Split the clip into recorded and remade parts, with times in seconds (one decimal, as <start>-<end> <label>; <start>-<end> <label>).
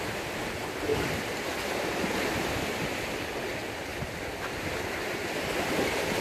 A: 0.0-3.9 recorded; 3.9-5.4 remade; 5.4-6.2 recorded